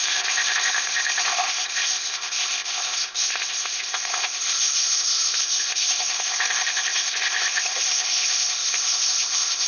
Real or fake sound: fake